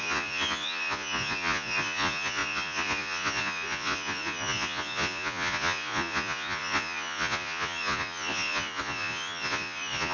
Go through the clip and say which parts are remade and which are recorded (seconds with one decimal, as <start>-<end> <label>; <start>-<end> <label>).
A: 0.0-10.1 remade